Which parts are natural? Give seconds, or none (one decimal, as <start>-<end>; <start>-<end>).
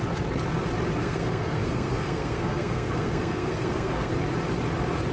0.0-1.0; 4.1-5.1